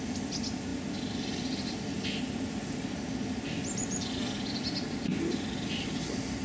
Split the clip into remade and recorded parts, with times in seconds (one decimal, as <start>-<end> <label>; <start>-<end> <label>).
0.0-6.4 recorded